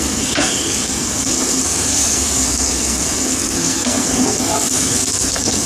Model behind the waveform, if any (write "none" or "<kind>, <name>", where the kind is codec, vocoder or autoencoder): codec, SNAC